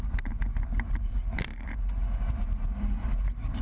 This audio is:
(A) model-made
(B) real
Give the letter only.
A